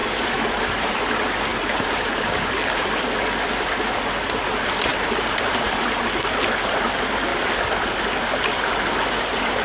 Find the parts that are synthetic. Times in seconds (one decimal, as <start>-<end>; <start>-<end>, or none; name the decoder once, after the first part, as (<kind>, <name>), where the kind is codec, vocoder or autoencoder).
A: 0.0-1.1 (vocoder, BigVGAN v2); 1.5-2.1; 4.9-6.0